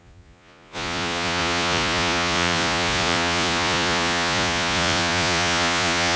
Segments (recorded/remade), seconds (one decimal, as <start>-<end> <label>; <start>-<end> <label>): 0.0-6.2 remade